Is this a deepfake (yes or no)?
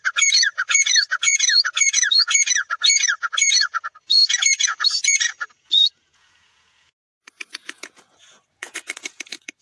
yes